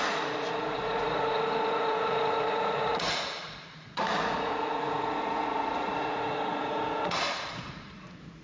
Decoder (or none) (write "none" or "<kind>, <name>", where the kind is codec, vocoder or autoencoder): vocoder, Vocos